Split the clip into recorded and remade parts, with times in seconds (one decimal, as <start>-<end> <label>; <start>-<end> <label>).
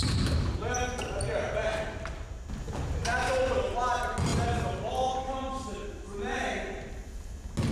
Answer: 0.0-7.7 recorded